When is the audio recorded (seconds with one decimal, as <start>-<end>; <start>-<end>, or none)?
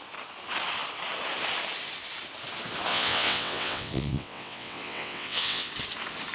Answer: 0.0-2.9; 5.7-6.3